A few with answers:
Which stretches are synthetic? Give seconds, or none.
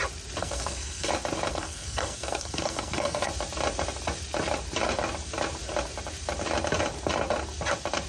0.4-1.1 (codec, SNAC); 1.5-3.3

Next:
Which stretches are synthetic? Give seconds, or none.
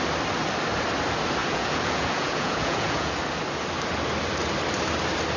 1.4-3.1 (vocoder, Vocos)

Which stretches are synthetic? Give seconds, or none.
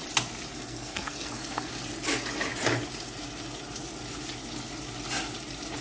0.5-1.7 (codec, SNAC)